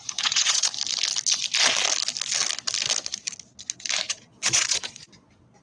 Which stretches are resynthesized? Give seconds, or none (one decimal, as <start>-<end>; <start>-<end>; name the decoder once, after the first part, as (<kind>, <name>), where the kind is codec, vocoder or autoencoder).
0.0-0.7 (vocoder, Vocos); 4.1-5.6